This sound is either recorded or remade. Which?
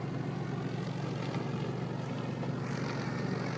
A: recorded